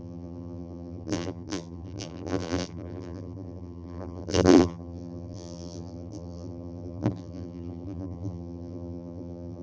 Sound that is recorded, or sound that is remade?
remade